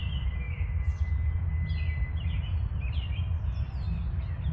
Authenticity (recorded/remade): recorded